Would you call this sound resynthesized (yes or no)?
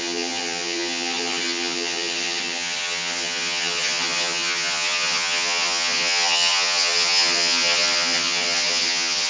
yes